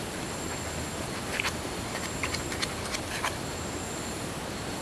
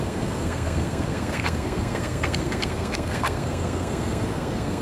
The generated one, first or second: second